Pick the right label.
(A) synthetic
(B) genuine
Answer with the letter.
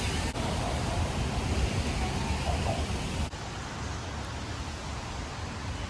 B